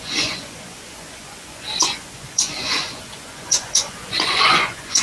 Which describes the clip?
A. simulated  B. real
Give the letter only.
A